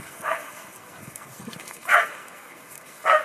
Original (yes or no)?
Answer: no